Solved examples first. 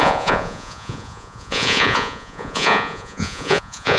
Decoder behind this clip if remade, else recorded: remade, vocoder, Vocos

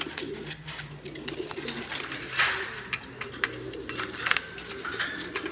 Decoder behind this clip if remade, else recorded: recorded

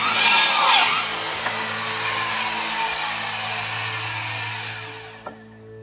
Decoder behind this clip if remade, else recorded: recorded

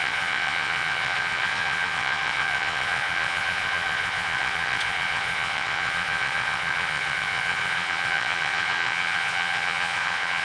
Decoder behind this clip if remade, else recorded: remade, vocoder, Vocos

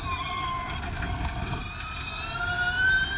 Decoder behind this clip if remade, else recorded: recorded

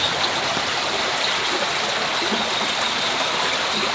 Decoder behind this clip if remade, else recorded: recorded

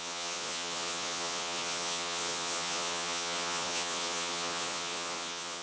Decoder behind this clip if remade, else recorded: remade, vocoder, Vocos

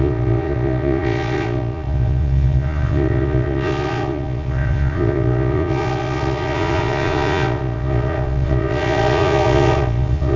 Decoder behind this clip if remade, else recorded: remade, vocoder, Vocos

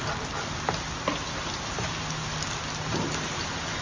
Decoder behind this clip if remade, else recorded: recorded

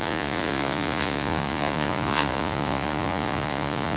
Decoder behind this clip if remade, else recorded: remade, vocoder, Vocos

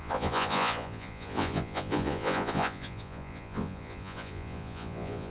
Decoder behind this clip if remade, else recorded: remade, vocoder, Vocos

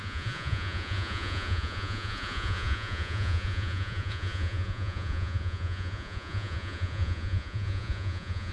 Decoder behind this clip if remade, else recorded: remade, vocoder, Vocos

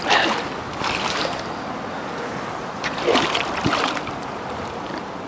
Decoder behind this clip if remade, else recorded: recorded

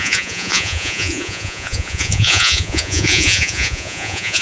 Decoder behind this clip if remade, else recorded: remade, vocoder, Vocos